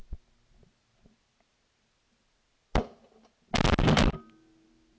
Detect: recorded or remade recorded